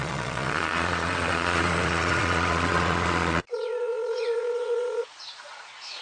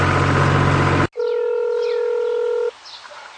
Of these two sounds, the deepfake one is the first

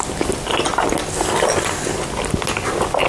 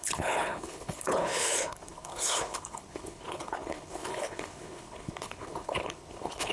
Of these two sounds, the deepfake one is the second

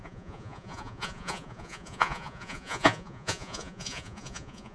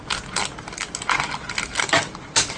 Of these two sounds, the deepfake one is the first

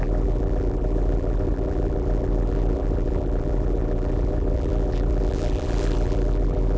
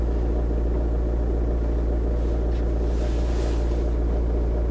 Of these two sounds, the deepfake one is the first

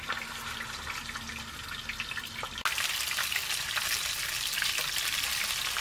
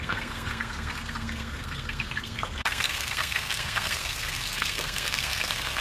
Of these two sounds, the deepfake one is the second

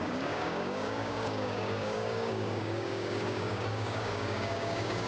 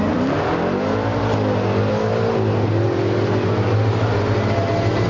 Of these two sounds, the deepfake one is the first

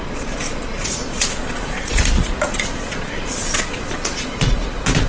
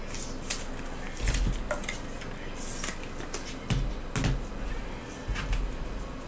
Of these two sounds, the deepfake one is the first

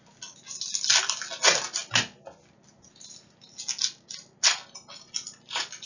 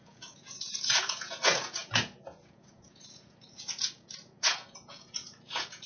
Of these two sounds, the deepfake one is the second